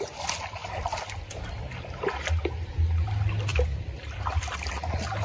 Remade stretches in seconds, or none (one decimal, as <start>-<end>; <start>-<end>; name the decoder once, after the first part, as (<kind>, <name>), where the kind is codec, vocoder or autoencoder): 3.5-4.7 (vocoder, BigVGAN v2)